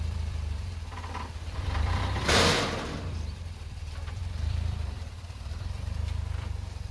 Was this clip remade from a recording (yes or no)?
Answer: yes